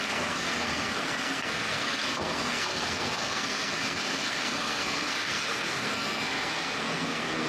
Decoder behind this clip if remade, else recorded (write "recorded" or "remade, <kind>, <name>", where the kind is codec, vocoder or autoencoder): remade, codec, SNAC